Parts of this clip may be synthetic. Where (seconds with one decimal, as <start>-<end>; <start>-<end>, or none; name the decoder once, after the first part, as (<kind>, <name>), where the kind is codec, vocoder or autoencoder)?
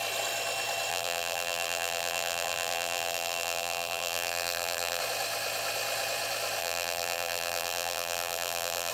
0.9-5.0 (vocoder, BigVGAN v2); 6.6-8.9